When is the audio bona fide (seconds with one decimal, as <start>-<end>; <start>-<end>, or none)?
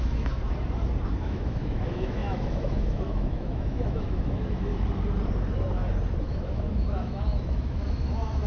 0.4-1.2; 4.7-6.2